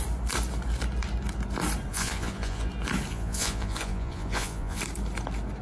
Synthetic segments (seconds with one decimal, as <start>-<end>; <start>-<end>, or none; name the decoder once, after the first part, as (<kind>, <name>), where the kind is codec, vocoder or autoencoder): 1.9-2.7 (vocoder, Vocos); 3.1-4.8